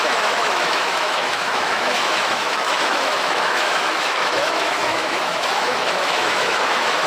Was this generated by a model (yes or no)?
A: yes